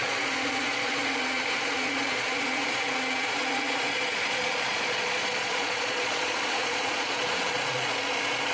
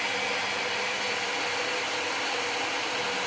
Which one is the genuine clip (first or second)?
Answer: second